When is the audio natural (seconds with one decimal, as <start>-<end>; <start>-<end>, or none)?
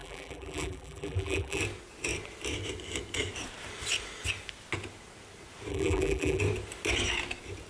1.6-5.7; 6.4-7.7